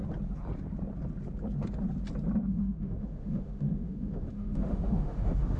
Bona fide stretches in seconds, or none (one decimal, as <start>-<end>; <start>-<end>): 0.0-2.4

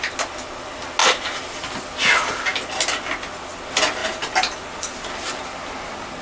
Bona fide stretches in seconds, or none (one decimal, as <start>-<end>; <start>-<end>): 0.0-1.0; 1.6-4.0; 5.6-6.2

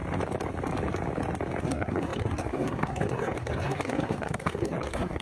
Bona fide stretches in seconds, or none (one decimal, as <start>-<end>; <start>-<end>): 0.0-1.6

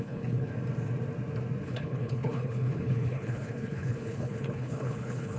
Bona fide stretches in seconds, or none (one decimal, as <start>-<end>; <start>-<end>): 0.5-1.6

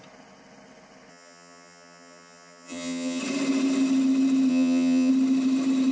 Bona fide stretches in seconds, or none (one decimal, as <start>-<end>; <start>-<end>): 0.0-1.1; 3.2-4.5; 5.1-5.9

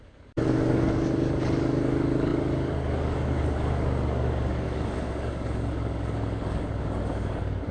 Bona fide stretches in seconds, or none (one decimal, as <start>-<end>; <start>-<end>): none

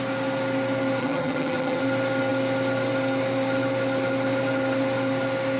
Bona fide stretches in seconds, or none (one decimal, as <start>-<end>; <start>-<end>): 0.0-1.0; 1.8-5.6